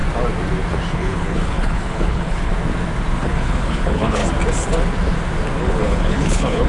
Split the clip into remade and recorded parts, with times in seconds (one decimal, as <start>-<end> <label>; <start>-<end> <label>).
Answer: 0.0-0.9 recorded; 0.9-2.5 remade; 2.5-3.2 recorded; 3.2-4.2 remade; 4.2-5.6 recorded; 5.6-6.7 remade